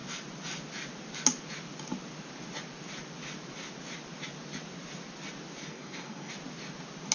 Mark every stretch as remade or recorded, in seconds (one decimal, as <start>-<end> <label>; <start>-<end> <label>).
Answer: 0.0-5.6 recorded; 5.6-6.3 remade; 6.3-7.1 recorded